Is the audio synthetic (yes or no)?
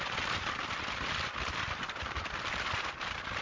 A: yes